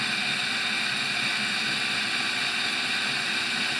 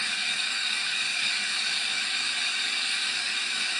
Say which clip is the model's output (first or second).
second